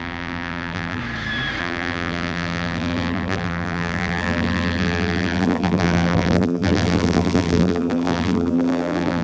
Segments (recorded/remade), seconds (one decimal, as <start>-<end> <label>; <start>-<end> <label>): 0.0-1.0 remade; 1.0-1.6 recorded; 1.6-9.2 remade